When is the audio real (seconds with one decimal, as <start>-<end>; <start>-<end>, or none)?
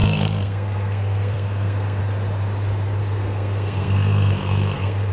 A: 2.0-3.0